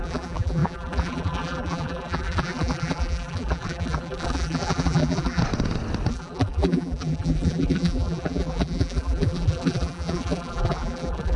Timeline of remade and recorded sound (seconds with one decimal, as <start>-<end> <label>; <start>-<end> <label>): 0.0-5.4 remade; 5.4-6.1 recorded; 6.1-11.4 remade